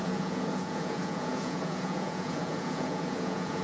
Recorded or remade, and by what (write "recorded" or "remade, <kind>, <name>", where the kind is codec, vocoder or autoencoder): remade, vocoder, Vocos